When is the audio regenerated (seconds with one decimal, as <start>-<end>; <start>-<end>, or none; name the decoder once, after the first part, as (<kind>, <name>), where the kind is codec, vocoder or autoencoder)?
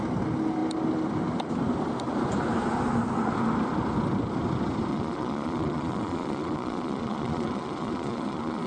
4.9-8.7 (vocoder, Vocos)